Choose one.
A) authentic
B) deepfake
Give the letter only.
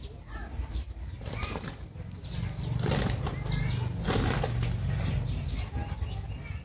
A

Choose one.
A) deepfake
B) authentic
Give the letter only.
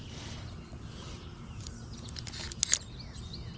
B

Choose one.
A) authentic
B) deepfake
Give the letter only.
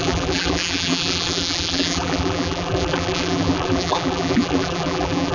B